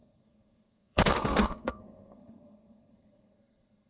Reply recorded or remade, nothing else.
remade